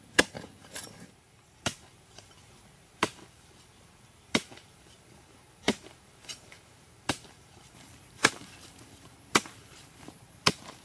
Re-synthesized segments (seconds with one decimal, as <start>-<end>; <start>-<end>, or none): 0.0-10.8